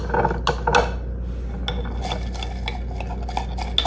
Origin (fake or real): real